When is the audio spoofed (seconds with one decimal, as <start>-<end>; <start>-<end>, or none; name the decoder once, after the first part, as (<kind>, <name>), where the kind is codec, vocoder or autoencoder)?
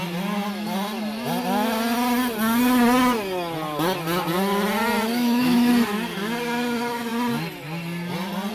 5.1-5.7 (autoencoder, DAC-VAE)